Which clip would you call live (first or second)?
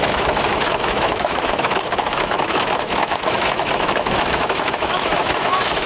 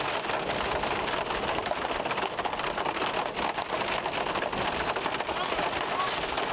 second